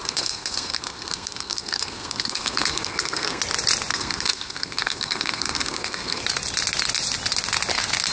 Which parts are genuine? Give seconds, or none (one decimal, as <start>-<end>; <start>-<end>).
3.4-3.9; 6.2-8.1